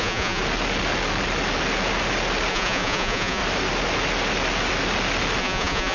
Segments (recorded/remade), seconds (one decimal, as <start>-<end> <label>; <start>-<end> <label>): 0.0-0.4 remade; 0.4-2.5 recorded; 2.5-3.4 remade; 3.4-5.4 recorded; 5.4-5.9 remade